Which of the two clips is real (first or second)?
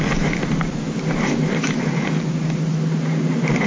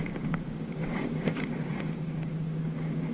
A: first